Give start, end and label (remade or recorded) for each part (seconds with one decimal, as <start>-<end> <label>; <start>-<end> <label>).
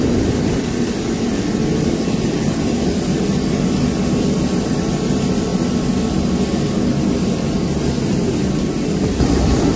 0.0-9.8 recorded